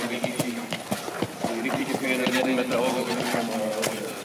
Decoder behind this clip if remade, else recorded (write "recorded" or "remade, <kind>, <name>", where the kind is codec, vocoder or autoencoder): recorded